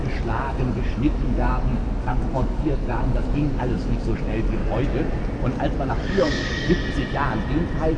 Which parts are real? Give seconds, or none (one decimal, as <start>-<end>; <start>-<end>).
4.6-5.9; 6.8-8.0